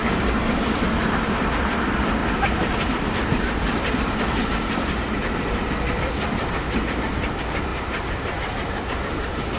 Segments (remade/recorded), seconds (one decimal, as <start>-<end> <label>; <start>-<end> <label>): 0.0-2.2 recorded; 2.2-5.6 remade; 5.6-7.7 recorded; 7.7-8.8 remade; 8.8-9.6 recorded